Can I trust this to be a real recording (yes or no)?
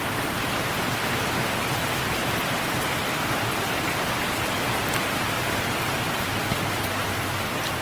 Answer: yes